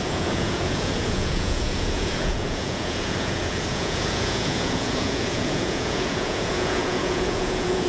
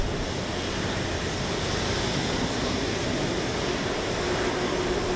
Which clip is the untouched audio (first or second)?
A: second